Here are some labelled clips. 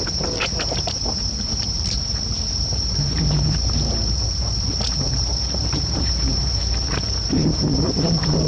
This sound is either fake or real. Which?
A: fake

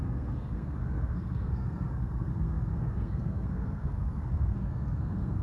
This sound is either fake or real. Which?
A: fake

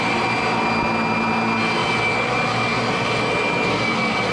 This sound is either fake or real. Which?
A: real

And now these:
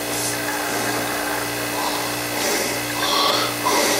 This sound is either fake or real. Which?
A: real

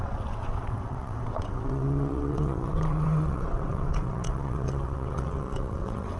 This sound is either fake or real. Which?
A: fake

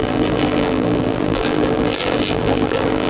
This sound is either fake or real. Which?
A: fake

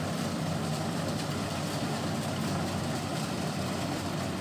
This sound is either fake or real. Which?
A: fake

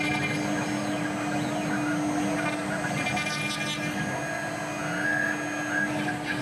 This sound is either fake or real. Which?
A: real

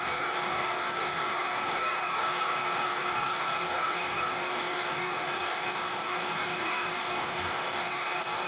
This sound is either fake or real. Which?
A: fake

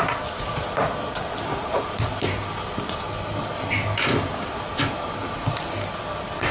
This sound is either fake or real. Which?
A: real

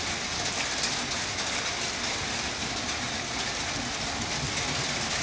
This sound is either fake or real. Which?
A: real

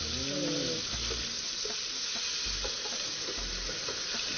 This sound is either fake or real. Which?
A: real